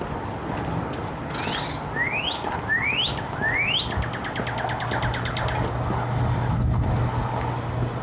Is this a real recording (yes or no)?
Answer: yes